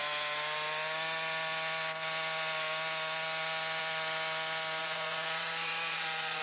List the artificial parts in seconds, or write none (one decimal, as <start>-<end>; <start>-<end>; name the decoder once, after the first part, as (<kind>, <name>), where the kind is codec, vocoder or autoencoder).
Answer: 4.8-6.4 (vocoder, Vocos)